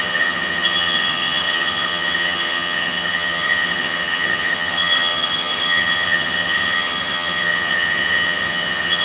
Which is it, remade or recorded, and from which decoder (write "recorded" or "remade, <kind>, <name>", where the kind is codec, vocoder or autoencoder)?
remade, vocoder, HiFi-GAN